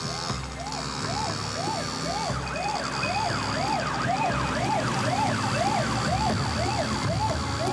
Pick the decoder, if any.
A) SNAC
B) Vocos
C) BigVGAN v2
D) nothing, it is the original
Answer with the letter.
D